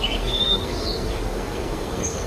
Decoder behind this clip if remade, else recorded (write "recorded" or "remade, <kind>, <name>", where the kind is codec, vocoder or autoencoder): remade, codec, SNAC